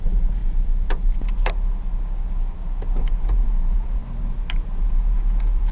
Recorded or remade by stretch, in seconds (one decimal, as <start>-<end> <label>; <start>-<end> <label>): 0.0-0.4 remade; 0.4-3.0 recorded; 3.0-4.0 remade; 4.0-4.8 recorded; 4.8-5.7 remade

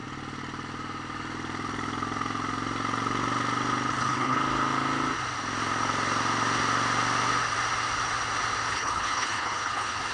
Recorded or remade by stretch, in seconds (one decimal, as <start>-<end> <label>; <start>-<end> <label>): 0.0-3.9 recorded; 3.9-4.4 remade; 4.4-8.7 recorded; 8.7-10.1 remade

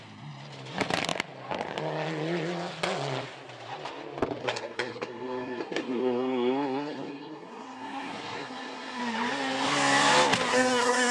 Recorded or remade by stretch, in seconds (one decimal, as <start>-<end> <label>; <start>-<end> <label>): 0.0-4.4 recorded; 4.4-9.0 remade; 9.0-10.5 recorded; 10.5-11.1 remade

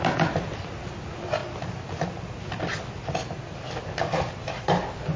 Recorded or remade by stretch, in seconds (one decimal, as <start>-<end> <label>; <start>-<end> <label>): 0.0-5.2 recorded

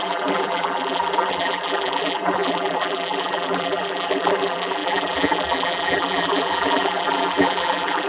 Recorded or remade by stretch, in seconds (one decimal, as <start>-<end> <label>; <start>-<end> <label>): 0.0-8.1 remade

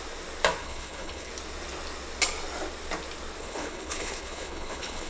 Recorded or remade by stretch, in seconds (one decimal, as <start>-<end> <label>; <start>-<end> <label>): 0.0-0.6 recorded; 0.6-1.3 remade; 1.3-3.4 recorded; 3.4-5.1 remade

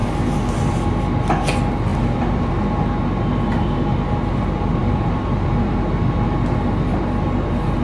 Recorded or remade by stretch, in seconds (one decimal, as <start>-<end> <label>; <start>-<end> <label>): 0.0-1.9 recorded; 1.9-2.5 remade; 2.5-4.8 recorded; 4.8-5.6 remade; 5.6-7.8 recorded